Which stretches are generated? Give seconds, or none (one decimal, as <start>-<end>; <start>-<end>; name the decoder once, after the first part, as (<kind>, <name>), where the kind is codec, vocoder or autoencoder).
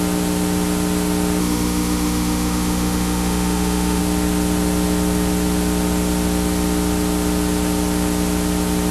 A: 1.4-4.0 (autoencoder, DAC-VAE)